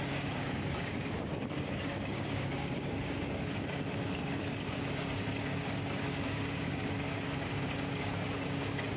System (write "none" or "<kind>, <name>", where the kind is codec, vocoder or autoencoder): codec, DAC